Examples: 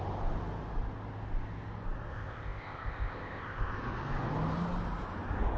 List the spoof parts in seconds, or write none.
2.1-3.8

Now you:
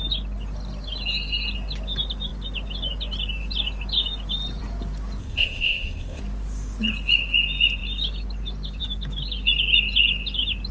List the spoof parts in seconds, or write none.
5.2-6.2